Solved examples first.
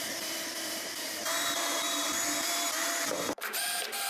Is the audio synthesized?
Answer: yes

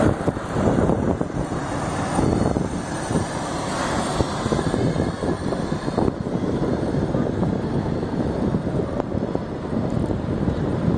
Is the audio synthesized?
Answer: yes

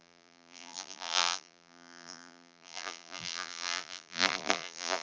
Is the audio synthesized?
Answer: yes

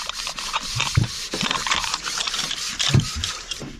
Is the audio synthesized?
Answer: yes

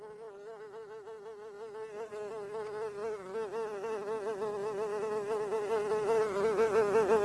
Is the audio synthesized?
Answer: no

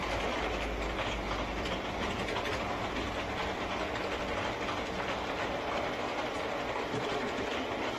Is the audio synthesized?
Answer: no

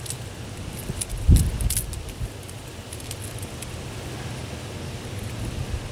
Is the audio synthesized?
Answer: no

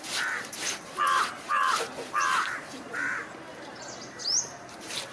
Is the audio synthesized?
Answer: yes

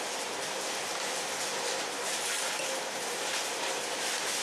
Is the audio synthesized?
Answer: no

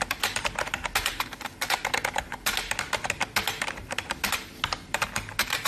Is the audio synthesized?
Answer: no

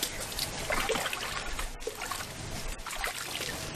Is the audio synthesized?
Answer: no